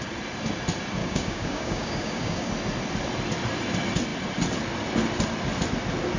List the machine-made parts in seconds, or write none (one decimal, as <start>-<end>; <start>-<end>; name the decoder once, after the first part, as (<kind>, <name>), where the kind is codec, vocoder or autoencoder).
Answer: 1.0-2.5 (codec, DAC)